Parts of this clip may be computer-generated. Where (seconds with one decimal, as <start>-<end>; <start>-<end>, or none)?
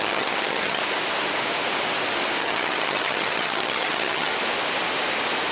0.0-0.8; 2.4-4.3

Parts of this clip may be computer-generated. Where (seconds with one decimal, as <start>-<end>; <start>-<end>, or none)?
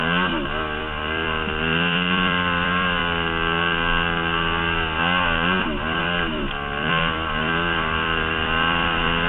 0.8-3.0; 5.6-9.3